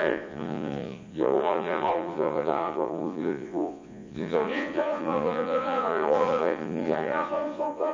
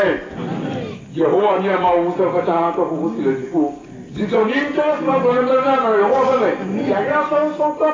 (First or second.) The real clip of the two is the second